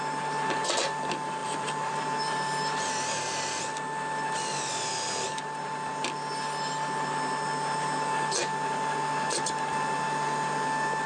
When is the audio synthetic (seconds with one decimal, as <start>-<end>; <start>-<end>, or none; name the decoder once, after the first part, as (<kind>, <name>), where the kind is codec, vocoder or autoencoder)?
1.4-3.6 (vocoder, BigVGAN v2)